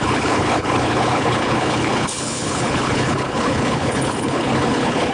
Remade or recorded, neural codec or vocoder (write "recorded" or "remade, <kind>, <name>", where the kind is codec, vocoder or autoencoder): remade, codec, HILCodec